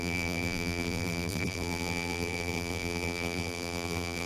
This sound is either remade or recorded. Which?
remade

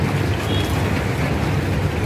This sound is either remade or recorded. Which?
recorded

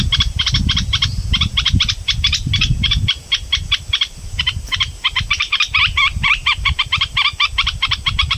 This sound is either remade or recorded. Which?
remade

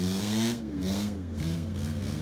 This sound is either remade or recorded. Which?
remade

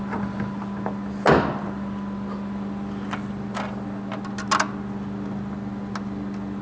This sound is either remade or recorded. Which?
recorded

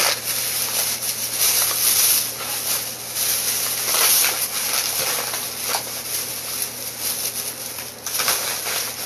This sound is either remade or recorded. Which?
recorded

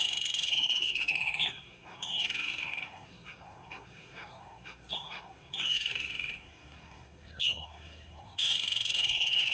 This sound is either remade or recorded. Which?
remade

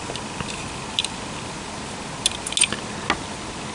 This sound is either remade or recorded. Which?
recorded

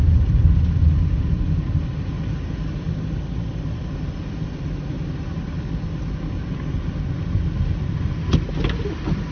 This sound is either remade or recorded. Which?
recorded